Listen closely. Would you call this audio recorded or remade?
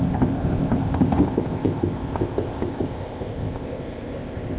remade